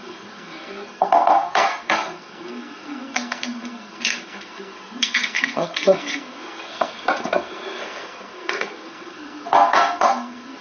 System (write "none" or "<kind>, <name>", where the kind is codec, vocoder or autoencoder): codec, SNAC